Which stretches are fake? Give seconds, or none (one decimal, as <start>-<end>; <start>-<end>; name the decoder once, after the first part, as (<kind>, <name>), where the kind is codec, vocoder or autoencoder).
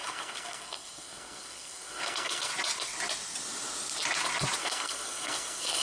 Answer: 0.0-2.5 (codec, SNAC); 4.6-5.8